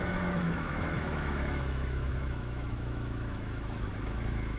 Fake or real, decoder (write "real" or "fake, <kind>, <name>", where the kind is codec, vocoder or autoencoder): fake, autoencoder, DAC-VAE